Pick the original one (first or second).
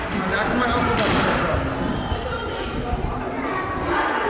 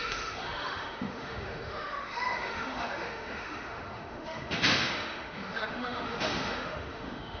first